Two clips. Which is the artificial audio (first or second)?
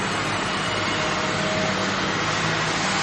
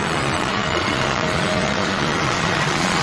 second